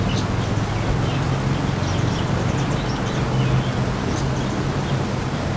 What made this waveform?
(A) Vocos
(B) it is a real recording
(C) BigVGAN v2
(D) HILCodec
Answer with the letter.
B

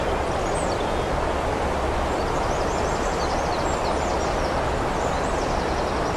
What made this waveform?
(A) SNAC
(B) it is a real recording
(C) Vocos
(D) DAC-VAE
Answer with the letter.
B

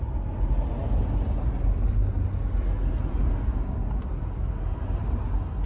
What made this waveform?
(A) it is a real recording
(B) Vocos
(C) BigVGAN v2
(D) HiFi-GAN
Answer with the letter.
A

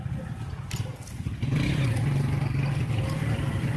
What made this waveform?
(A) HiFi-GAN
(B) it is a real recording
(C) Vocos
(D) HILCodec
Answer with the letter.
B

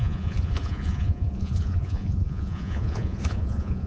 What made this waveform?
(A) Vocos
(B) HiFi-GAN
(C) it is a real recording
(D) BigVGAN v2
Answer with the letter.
A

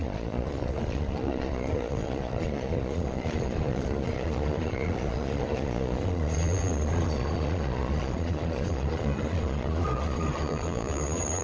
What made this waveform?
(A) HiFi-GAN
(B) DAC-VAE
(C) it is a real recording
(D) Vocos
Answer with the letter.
D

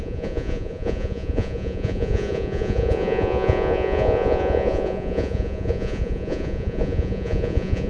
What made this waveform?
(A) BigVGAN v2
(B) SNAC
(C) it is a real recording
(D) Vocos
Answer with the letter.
D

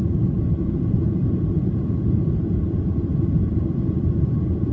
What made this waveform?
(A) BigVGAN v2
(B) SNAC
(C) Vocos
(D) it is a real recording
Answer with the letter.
C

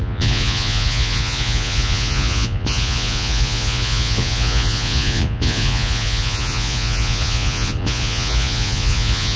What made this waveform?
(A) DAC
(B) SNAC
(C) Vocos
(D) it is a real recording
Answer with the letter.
C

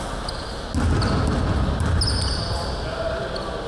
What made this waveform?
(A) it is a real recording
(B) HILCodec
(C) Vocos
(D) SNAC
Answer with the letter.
A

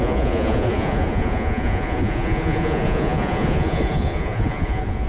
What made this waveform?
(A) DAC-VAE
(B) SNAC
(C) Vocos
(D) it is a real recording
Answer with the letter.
C